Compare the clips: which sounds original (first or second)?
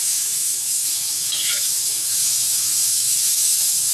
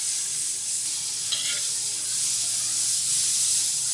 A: second